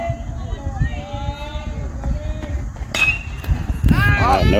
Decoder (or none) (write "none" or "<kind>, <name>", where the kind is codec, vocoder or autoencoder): none